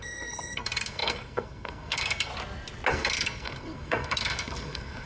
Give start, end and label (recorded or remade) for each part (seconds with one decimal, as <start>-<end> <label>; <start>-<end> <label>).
0.0-2.3 remade; 2.3-2.9 recorded; 2.9-5.1 remade